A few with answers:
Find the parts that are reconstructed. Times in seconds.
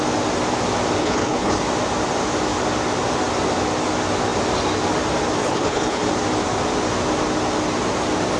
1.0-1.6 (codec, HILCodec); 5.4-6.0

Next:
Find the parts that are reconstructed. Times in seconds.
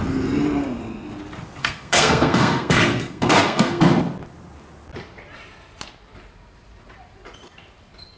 1.6-3.8 (codec, SNAC)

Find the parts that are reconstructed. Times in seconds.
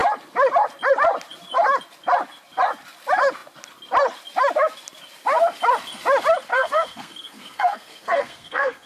6.5-8.9 (codec, SNAC)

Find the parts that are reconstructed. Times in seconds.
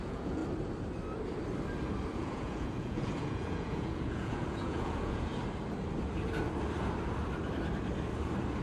0.0-0.4 (vocoder, Vocos); 2.2-5.3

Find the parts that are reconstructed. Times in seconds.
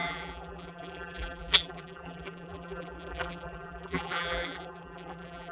0.0-5.5 (vocoder, BigVGAN v2)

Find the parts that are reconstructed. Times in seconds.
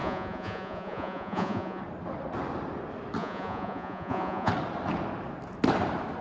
0.0-1.8 (vocoder, Vocos); 3.2-4.5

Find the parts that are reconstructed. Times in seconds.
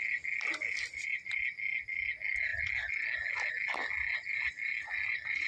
none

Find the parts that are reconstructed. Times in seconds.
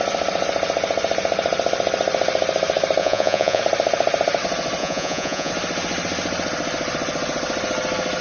3.0-3.6 (vocoder, Vocos); 4.8-5.5